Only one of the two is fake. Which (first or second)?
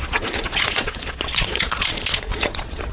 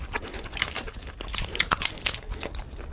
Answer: first